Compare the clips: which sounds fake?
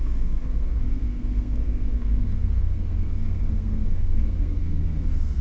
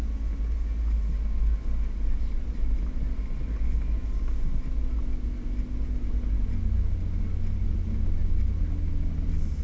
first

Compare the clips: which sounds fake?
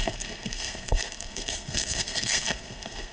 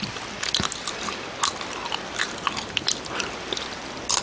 first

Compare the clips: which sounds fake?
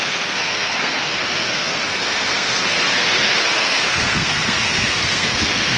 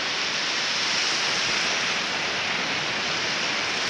first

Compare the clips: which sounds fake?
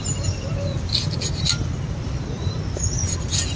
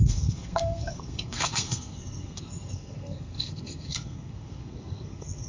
second